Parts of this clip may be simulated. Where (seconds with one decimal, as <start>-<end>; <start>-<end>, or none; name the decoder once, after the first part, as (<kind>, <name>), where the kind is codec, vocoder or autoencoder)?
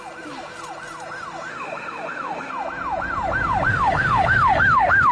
1.5-2.5 (autoencoder, DAC-VAE); 3.7-5.1